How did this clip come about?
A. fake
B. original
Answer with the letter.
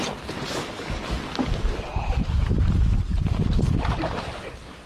B